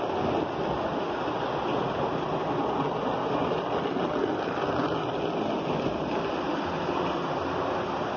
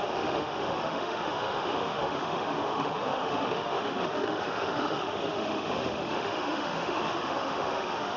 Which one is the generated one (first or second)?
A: second